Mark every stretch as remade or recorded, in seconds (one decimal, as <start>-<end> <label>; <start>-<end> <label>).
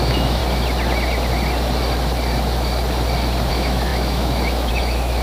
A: 0.0-0.4 remade; 0.4-3.5 recorded; 3.5-5.2 remade